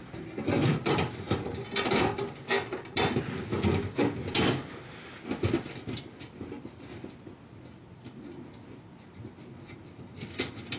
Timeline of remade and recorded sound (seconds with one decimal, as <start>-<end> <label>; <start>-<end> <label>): 0.0-10.8 recorded